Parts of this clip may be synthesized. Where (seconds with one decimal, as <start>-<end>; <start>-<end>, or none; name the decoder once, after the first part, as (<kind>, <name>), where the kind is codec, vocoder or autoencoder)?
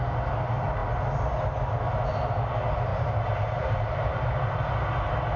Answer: 2.9-4.3 (vocoder, BigVGAN v2)